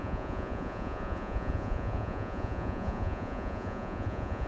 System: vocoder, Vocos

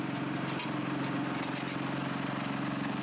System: none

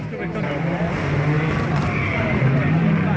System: none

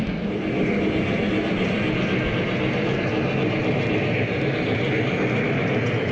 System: none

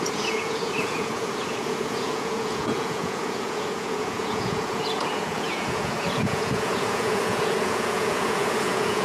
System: vocoder, Vocos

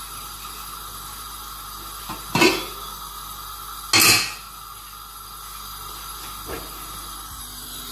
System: none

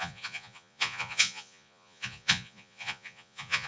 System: vocoder, Vocos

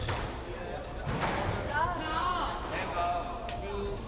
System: none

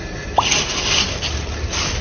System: none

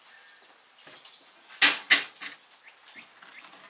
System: none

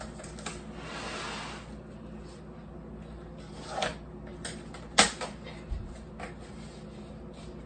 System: none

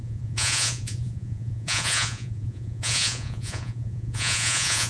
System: vocoder, Vocos